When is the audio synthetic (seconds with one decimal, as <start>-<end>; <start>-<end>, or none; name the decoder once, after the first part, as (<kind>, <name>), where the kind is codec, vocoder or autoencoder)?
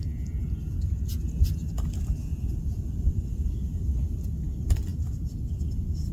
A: 2.3-3.5 (vocoder, Vocos)